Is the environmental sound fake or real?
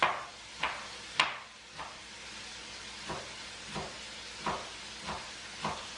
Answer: real